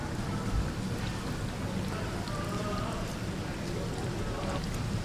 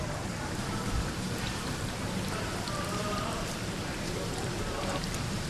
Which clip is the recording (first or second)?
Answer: first